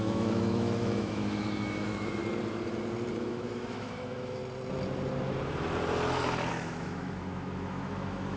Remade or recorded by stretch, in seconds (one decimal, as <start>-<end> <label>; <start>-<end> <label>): 0.0-2.2 remade; 2.2-3.1 recorded; 3.1-4.4 remade; 4.4-6.5 recorded; 6.5-8.4 remade